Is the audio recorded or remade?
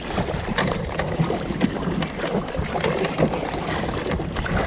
recorded